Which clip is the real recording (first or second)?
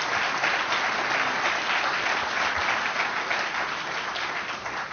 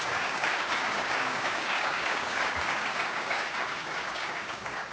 first